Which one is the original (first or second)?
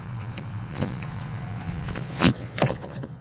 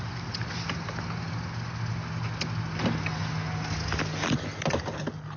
second